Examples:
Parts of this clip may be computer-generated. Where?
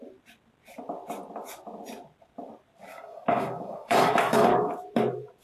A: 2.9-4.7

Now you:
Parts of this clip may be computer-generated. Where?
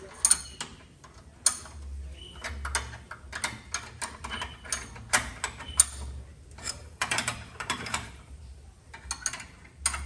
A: 6.6-8.4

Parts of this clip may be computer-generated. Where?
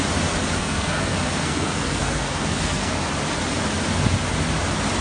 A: 0.6-3.0